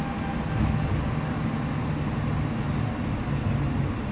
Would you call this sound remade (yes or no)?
no